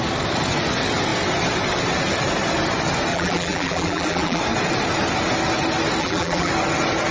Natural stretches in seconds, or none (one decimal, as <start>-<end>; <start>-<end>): 0.0-3.1; 4.4-6.0; 6.5-7.1